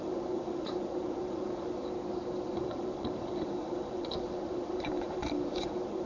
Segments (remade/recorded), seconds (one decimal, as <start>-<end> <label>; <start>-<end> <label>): 0.0-1.8 remade; 1.8-2.5 recorded; 2.5-6.1 remade